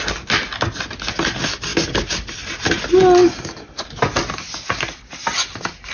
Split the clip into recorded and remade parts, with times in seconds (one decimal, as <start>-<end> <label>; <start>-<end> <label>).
0.0-5.9 recorded